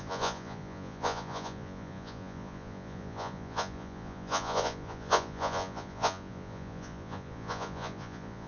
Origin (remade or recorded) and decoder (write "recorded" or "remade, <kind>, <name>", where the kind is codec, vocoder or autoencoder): remade, vocoder, Vocos